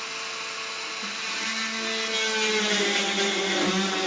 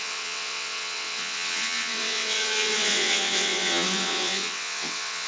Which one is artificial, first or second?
second